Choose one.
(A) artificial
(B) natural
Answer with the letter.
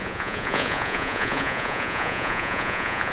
A